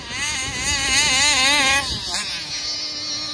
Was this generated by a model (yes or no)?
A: no